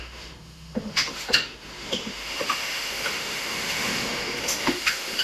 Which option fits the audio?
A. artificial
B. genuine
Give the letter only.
A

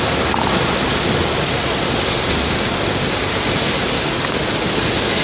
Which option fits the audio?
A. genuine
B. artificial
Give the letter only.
A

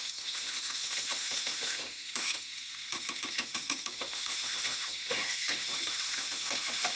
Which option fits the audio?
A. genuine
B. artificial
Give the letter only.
B